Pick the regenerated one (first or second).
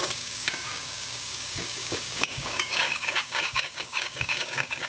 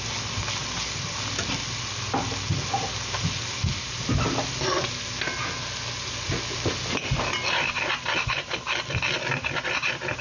first